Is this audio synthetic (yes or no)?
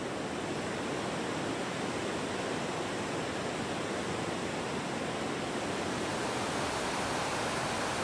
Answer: no